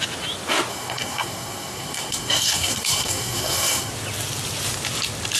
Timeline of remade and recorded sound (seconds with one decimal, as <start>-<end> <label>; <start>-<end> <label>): 0.0-0.7 recorded; 0.7-3.9 remade; 3.9-5.4 recorded